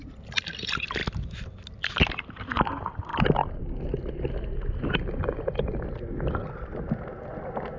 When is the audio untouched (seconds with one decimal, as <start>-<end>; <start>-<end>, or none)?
0.0-7.8